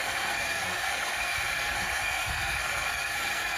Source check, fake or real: fake